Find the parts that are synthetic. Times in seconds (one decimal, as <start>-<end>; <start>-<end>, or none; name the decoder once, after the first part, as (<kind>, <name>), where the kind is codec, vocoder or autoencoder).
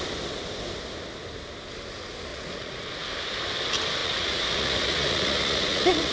2.3-2.9 (vocoder, Vocos); 4.0-6.1